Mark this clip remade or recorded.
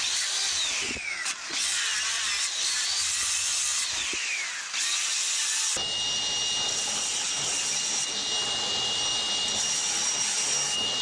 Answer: recorded